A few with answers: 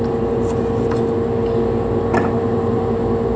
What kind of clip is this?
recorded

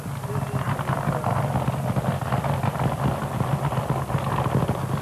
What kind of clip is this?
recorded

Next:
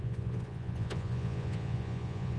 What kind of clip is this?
remade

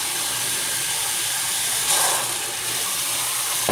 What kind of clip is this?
recorded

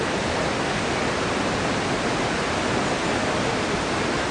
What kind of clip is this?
recorded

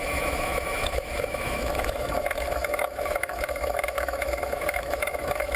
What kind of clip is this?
remade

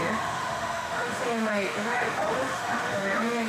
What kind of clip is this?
remade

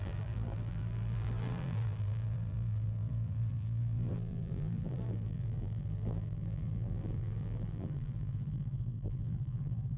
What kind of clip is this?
remade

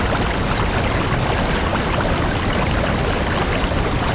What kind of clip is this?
recorded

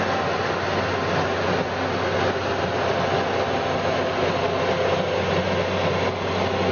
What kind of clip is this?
recorded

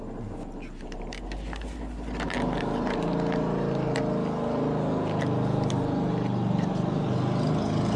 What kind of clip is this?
recorded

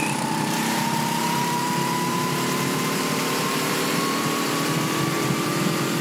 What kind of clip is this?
remade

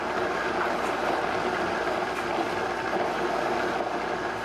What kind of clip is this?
recorded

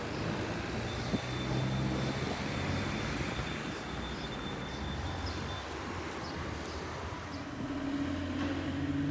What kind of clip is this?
recorded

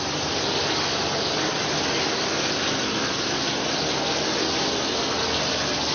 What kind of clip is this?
recorded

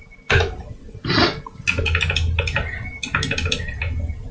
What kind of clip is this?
recorded